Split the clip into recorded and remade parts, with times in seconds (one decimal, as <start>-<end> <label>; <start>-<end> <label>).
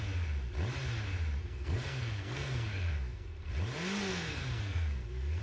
0.0-1.4 recorded; 1.4-3.5 remade; 3.5-4.1 recorded; 4.1-5.4 remade